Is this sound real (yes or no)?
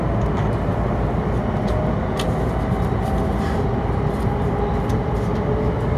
yes